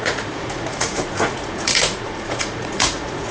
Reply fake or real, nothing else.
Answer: fake